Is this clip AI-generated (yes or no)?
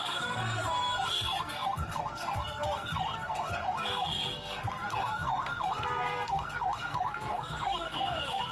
yes